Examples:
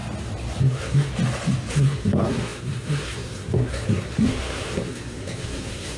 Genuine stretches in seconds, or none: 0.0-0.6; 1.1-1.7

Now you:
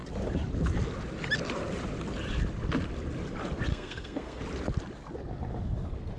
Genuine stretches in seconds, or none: 0.0-3.7; 4.4-6.2

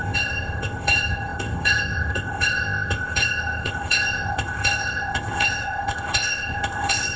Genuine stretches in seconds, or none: none

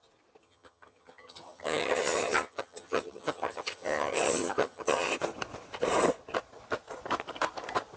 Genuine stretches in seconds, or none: 0.0-0.4; 5.1-8.0

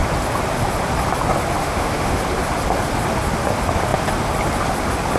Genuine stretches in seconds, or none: 0.0-1.6; 2.2-5.2

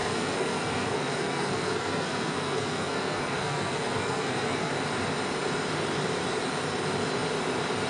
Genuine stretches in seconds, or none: 4.7-7.9

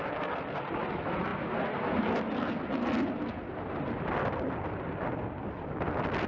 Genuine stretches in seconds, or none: 0.0-6.3